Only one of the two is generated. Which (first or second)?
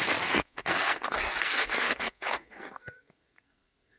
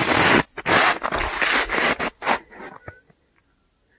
first